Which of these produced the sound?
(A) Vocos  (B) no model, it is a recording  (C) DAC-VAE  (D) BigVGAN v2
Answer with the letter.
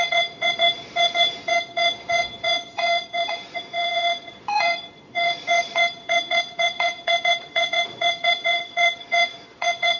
A